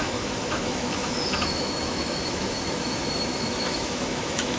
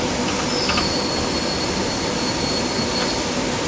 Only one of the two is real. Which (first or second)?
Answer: second